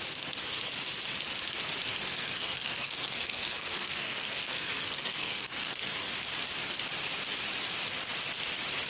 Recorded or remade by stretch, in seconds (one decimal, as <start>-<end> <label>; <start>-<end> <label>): 0.0-2.1 recorded; 2.1-6.1 remade; 6.1-8.9 recorded